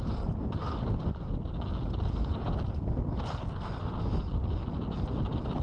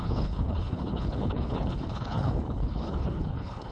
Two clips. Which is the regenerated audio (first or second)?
second